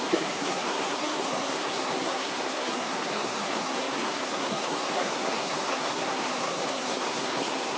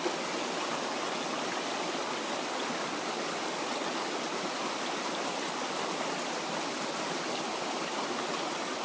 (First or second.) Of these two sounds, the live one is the second